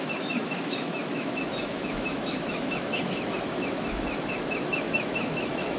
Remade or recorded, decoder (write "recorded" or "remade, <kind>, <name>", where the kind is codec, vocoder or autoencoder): remade, autoencoder, DAC-VAE